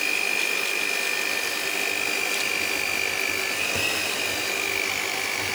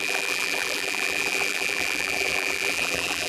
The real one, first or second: first